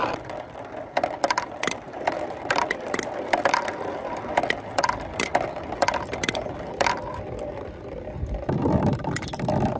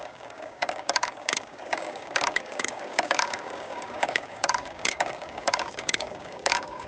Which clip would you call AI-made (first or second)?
second